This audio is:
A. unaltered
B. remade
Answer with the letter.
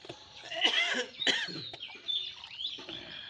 B